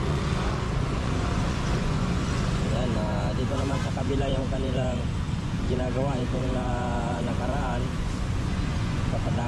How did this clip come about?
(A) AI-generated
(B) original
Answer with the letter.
A